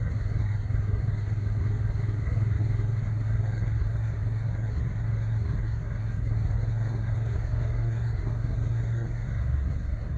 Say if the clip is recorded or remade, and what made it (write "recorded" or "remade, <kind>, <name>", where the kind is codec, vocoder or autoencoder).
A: remade, codec, SNAC